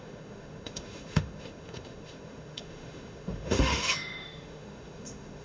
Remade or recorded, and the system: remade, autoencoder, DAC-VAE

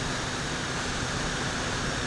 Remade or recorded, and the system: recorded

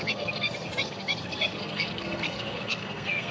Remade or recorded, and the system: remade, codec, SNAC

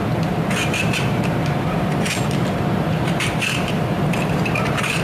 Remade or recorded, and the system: remade, vocoder, BigVGAN v2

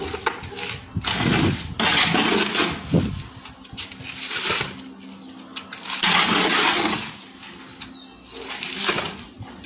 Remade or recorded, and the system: recorded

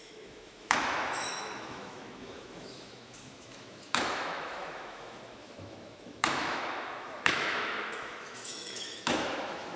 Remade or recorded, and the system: remade, autoencoder, DAC-VAE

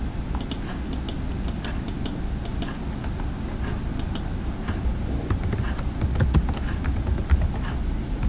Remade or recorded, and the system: recorded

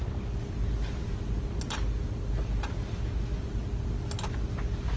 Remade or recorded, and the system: recorded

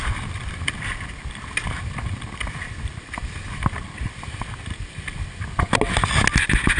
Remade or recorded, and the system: recorded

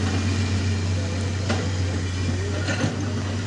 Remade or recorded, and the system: recorded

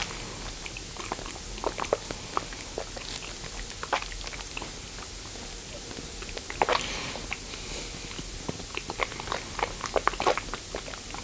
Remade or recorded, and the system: recorded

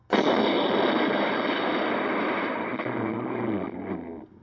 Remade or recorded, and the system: recorded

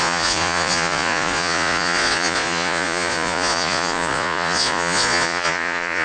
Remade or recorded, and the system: remade, vocoder, Vocos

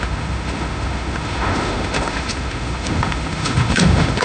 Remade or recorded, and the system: remade, autoencoder, DAC-VAE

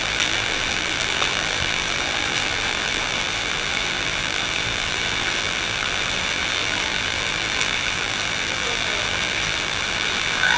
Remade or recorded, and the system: remade, vocoder, BigVGAN v2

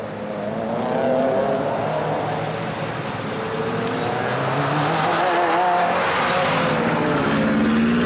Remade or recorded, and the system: recorded